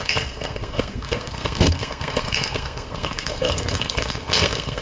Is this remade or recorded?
remade